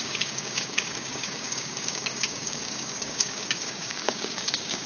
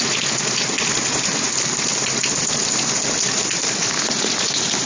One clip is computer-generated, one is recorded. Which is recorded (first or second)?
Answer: second